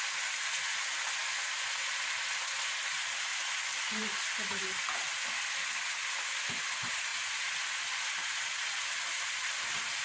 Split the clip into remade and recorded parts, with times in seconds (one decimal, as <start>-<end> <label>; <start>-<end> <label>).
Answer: 0.0-3.7 recorded; 3.7-5.5 remade; 5.5-10.0 recorded